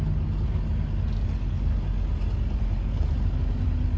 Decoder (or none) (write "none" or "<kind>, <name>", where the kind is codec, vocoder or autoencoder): none